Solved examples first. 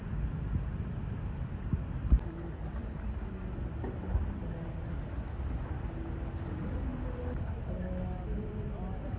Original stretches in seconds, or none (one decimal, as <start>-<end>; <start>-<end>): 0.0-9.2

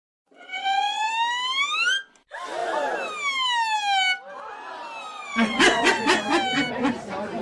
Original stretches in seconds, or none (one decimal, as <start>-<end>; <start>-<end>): 1.1-5.1; 6.2-7.4

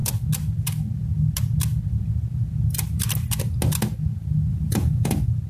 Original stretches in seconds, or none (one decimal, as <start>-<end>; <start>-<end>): 0.0-4.5; 5.1-5.5

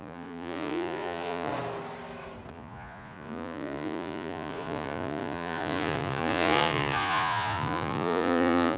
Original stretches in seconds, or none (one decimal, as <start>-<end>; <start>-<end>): 1.5-2.5

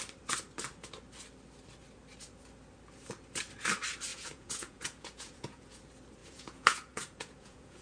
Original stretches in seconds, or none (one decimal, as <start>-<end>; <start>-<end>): 0.0-4.1; 5.8-6.2